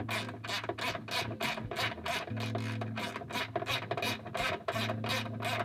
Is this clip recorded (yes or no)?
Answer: yes